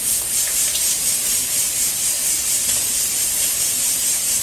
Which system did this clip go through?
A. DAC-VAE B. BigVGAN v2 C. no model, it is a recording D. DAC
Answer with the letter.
B